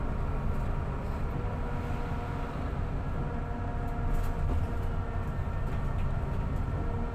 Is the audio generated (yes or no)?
no